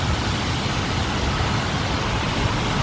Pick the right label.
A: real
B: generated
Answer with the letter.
A